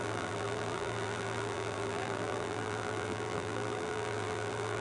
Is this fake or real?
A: fake